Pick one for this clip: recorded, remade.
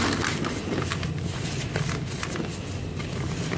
recorded